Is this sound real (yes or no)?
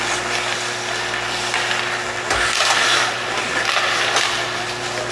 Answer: yes